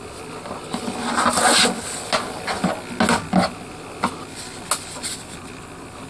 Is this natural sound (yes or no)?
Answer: yes